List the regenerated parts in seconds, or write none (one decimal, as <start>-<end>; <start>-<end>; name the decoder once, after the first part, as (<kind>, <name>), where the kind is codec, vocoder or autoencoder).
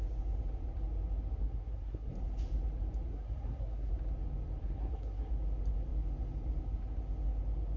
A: 1.4-2.1 (codec, SNAC); 3.1-3.9; 4.6-5.3